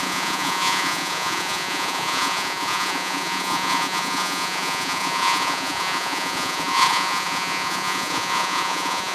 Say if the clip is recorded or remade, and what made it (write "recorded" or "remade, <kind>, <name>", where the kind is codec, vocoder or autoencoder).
remade, vocoder, Vocos